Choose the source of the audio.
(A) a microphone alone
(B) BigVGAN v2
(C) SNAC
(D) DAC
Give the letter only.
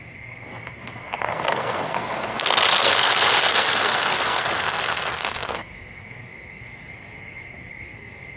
C